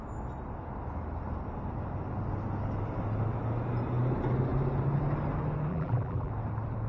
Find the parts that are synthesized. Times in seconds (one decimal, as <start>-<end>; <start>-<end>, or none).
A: 5.7-6.3